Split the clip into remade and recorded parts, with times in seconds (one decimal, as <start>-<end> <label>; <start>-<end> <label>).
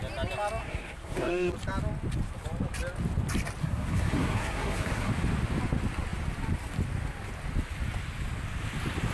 0.0-0.6 recorded; 0.6-1.5 remade; 1.5-3.6 recorded; 3.6-5.1 remade; 5.1-9.1 recorded